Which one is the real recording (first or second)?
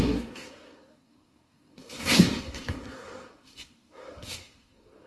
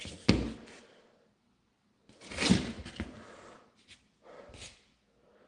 second